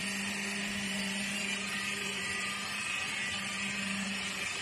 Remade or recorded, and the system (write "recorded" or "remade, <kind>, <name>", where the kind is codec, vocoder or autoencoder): remade, vocoder, BigVGAN v2